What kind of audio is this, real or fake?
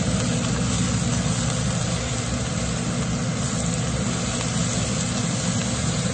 real